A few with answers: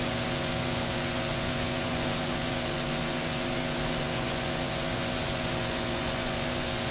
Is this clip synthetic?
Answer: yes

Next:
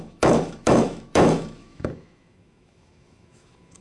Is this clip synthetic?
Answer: yes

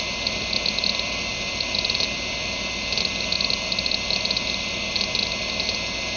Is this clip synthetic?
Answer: no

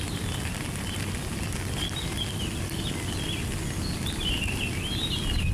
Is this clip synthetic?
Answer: no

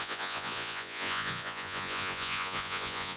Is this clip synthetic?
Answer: yes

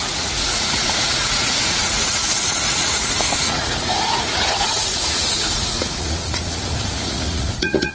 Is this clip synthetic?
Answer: yes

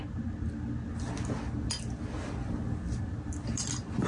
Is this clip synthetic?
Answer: no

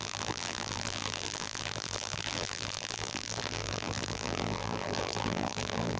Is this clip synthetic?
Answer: yes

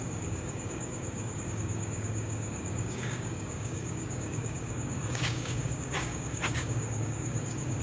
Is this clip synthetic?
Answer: yes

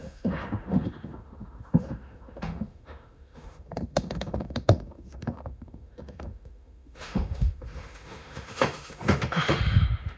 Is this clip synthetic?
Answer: yes